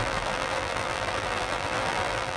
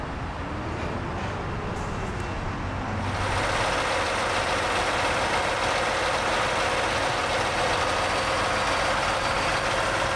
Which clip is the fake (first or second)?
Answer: first